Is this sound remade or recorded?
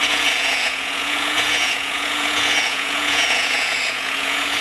remade